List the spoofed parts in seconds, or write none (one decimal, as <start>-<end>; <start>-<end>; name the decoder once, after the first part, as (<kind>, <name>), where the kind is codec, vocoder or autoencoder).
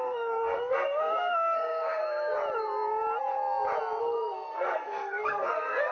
0.0-2.0 (codec, SNAC); 4.0-5.9